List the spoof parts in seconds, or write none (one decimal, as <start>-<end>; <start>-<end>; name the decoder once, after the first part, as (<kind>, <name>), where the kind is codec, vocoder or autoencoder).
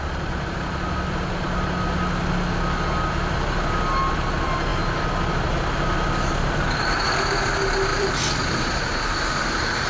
7.9-8.8 (vocoder, BigVGAN v2)